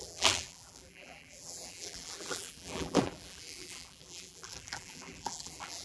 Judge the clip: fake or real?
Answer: fake